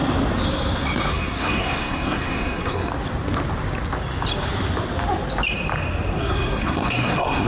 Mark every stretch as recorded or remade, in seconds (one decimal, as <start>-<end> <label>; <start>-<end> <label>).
0.0-1.1 recorded; 1.1-2.9 remade; 2.9-6.1 recorded; 6.1-7.5 remade